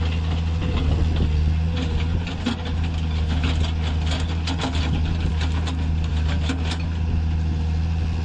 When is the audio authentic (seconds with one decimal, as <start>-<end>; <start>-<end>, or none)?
0.0-8.2